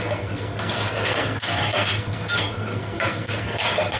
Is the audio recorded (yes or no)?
no